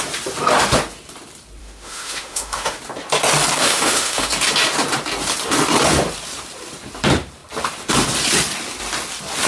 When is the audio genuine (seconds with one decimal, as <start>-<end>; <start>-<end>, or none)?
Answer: 0.0-1.6; 2.8-3.6; 4.3-9.5